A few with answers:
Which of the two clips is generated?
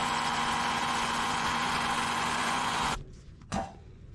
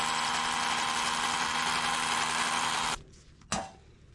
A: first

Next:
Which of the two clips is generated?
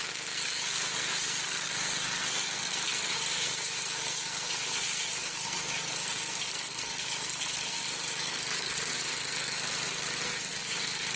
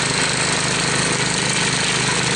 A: first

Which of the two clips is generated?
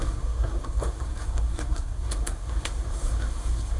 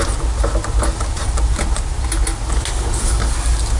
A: first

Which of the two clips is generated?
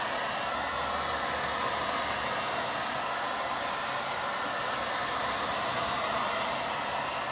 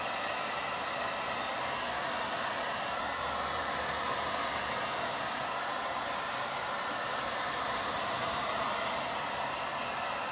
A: second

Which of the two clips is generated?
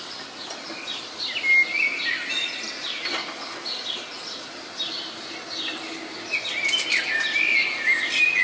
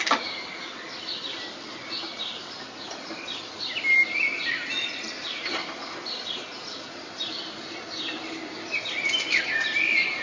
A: second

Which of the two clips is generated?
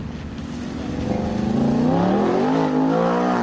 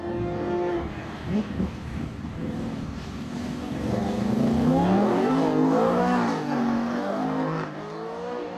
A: second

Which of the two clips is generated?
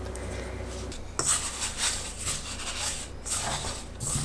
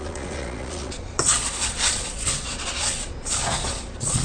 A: second